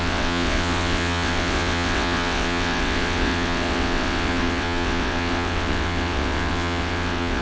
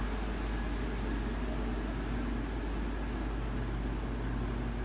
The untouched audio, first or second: second